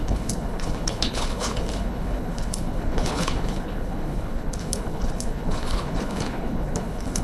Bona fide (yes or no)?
no